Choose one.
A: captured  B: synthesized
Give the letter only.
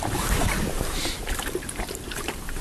B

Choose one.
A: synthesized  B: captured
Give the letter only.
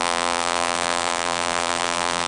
A